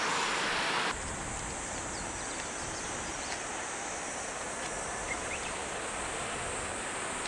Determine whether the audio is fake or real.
real